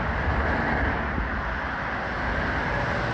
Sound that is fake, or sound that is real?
real